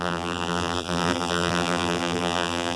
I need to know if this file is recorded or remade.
remade